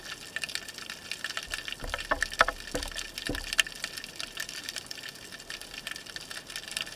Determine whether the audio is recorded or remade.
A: recorded